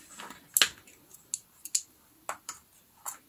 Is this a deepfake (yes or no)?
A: no